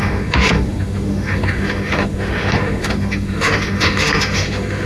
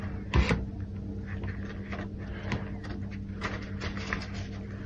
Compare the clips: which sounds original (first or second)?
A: second